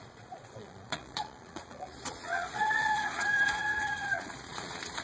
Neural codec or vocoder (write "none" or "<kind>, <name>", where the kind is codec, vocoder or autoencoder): vocoder, Vocos